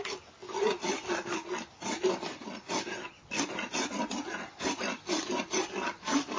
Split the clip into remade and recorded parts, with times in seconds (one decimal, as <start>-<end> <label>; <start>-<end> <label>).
0.0-6.4 recorded